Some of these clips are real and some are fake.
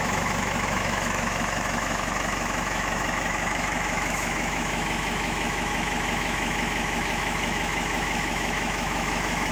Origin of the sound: fake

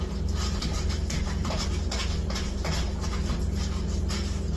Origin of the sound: real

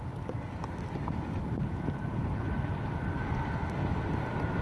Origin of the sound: real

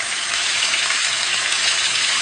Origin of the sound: fake